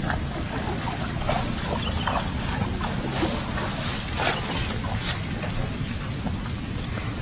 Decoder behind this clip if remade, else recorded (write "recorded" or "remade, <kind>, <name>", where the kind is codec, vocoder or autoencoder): recorded